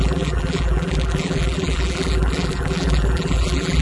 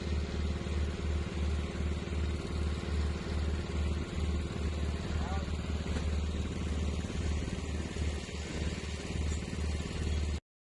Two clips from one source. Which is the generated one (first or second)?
first